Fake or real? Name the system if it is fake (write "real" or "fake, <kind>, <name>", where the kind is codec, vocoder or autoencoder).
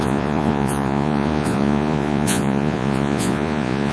fake, vocoder, Vocos